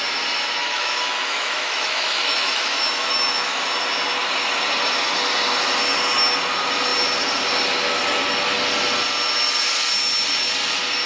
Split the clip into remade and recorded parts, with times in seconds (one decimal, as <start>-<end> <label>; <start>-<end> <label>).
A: 0.0-0.6 recorded; 0.6-3.6 remade; 3.6-11.1 recorded